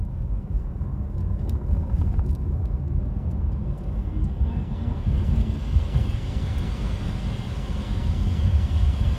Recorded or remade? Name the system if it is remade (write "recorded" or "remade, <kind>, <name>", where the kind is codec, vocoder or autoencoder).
remade, codec, SNAC